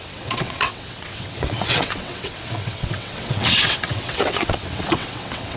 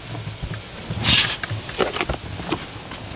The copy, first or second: first